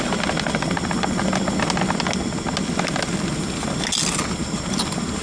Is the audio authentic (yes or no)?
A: yes